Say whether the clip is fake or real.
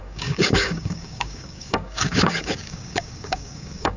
fake